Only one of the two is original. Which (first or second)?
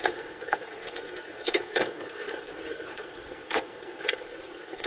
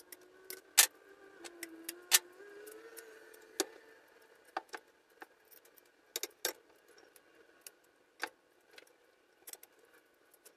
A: second